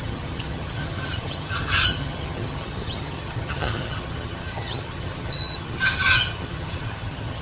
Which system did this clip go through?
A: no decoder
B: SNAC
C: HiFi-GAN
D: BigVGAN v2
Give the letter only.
C